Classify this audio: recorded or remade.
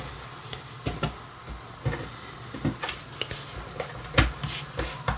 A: recorded